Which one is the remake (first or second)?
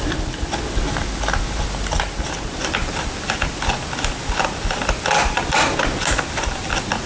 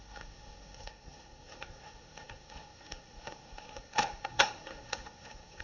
second